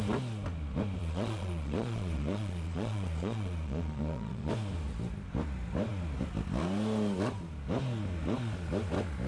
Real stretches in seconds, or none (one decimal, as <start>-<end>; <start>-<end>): 0.0-1.0; 4.5-9.3